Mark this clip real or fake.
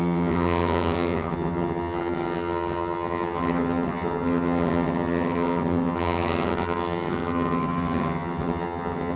fake